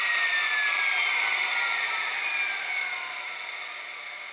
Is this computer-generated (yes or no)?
no